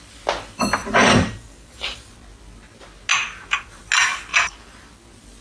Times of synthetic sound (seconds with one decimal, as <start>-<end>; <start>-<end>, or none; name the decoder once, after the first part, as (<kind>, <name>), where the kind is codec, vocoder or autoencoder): 0.8-2.1 (vocoder, BigVGAN v2); 3.2-3.8; 4.3-4.9